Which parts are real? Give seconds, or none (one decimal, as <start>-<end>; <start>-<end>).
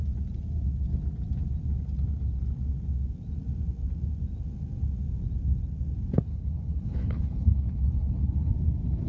0.0-6.3; 8.5-9.1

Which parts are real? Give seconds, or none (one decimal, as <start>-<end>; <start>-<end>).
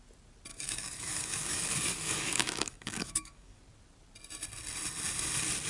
0.0-0.5; 3.6-5.7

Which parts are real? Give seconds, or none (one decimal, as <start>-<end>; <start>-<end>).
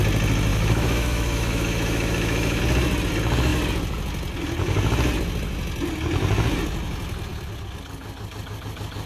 0.0-0.5; 2.6-9.1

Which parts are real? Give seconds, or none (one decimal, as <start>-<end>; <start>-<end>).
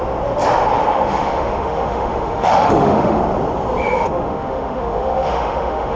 0.0-0.9; 3.2-3.8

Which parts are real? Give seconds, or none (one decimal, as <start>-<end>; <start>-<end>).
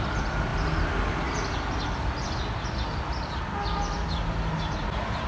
0.0-5.3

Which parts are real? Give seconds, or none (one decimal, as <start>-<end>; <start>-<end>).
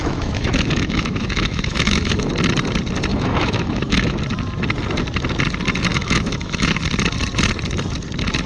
2.3-3.1; 4.2-5.9; 6.8-8.5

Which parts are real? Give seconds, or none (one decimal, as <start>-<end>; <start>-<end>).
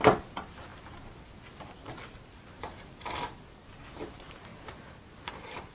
0.7-2.2; 4.5-5.3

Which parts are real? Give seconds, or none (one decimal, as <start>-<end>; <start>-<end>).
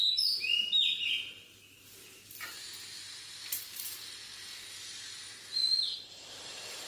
1.6-5.6; 6.5-6.9